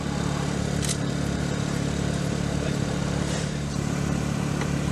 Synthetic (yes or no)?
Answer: yes